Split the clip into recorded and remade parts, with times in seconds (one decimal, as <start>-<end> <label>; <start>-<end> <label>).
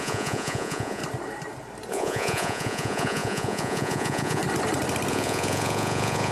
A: 0.0-1.0 remade; 1.0-1.9 recorded; 1.9-4.4 remade; 4.4-5.1 recorded; 5.1-6.3 remade